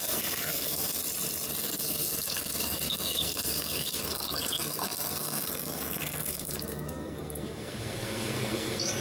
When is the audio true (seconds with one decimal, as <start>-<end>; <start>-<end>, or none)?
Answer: 1.0-1.6